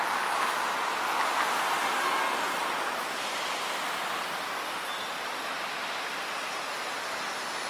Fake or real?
real